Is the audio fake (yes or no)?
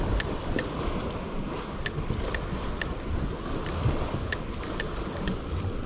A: no